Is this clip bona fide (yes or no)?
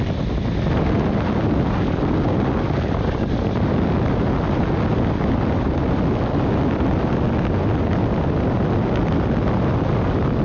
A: yes